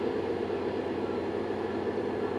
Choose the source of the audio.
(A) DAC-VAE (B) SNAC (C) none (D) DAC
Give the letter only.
C